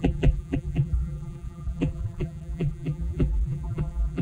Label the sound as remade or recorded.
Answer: remade